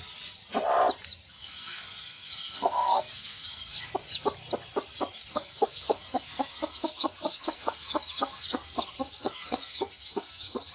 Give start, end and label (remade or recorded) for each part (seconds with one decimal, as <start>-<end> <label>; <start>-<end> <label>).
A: 0.0-1.4 recorded; 1.4-3.9 remade; 3.9-5.3 recorded; 5.3-10.7 remade